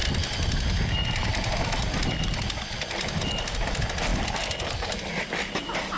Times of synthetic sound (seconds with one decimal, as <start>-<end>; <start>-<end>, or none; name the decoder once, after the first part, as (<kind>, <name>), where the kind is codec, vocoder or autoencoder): none